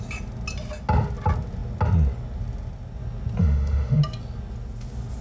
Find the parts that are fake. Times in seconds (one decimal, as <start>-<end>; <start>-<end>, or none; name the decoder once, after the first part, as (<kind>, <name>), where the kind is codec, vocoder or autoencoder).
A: 3.4-4.0 (autoencoder, DAC-VAE)